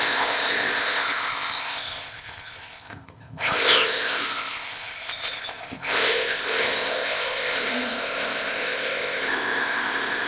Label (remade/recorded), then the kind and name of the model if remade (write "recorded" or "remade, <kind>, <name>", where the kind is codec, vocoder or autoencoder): remade, codec, ZipCodec